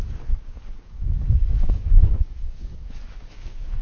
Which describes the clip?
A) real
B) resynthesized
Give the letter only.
B